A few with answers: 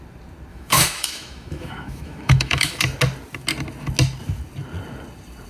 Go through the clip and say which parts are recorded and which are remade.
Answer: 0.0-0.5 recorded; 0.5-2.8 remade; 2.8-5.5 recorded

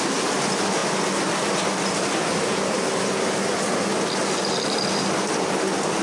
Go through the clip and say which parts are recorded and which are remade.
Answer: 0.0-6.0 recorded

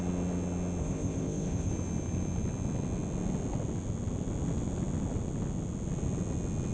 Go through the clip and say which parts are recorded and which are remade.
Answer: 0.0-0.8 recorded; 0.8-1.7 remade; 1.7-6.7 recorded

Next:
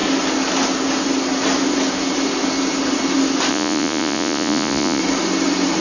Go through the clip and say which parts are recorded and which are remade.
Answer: 0.0-3.5 recorded; 3.5-5.0 remade; 5.0-5.8 recorded

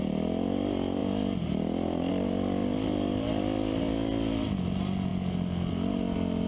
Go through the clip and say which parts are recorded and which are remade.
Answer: 0.0-6.5 recorded

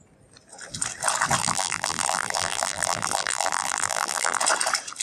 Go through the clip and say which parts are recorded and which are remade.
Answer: 0.0-1.4 recorded; 1.4-4.4 remade; 4.4-5.0 recorded

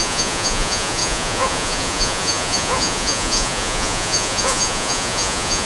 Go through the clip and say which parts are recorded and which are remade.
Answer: 0.0-5.7 remade

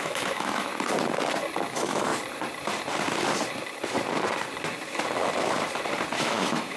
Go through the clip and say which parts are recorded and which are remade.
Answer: 0.0-0.7 remade; 0.7-1.7 recorded; 1.7-2.1 remade; 2.1-6.2 recorded; 6.2-6.8 remade